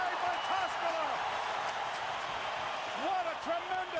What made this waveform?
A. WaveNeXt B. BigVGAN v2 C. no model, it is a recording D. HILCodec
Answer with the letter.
C